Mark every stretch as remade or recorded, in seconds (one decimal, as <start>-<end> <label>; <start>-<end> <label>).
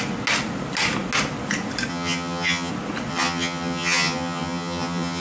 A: 0.0-1.9 recorded; 1.9-2.7 remade; 2.7-3.1 recorded; 3.1-5.2 remade